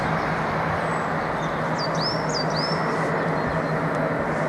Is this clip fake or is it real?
real